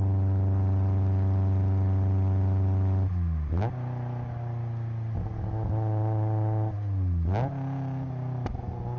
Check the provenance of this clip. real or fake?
real